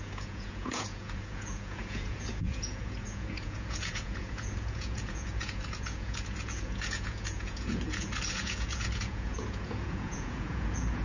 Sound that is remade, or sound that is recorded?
remade